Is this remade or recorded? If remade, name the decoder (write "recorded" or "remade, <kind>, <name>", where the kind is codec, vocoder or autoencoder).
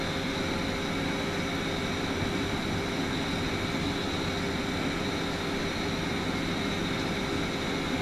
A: recorded